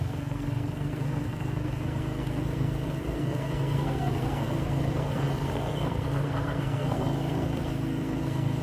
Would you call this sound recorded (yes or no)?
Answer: no